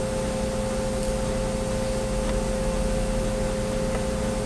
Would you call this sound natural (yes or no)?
yes